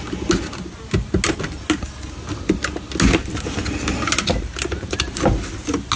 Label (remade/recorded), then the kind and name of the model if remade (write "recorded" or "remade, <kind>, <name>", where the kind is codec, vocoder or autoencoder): recorded